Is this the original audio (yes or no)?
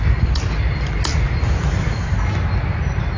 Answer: yes